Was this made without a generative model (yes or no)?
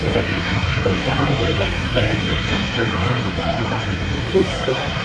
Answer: no